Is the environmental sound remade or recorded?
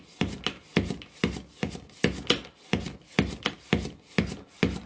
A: recorded